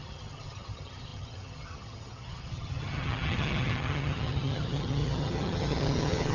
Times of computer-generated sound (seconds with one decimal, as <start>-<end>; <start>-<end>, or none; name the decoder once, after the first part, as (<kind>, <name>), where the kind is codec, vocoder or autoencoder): 0.0-6.3 (vocoder, HiFi-GAN)